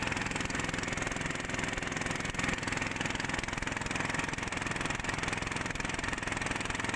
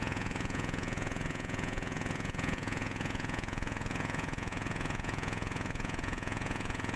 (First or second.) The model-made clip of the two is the second